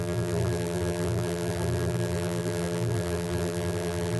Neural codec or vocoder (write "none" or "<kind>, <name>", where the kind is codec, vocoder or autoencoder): vocoder, BigVGAN v2